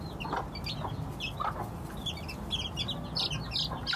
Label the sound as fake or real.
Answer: real